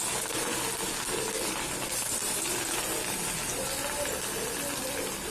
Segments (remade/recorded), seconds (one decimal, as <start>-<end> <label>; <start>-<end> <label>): 0.0-2.2 recorded; 2.2-4.1 remade; 4.1-5.3 recorded